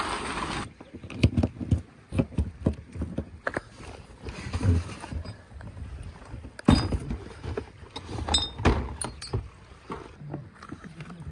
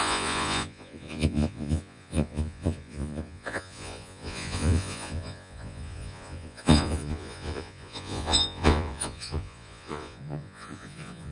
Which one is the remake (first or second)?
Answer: second